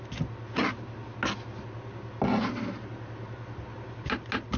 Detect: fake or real real